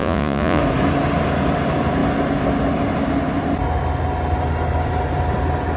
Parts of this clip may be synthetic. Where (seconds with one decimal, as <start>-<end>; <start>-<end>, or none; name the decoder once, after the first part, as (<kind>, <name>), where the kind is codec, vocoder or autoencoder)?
0.0-0.6 (vocoder, Vocos)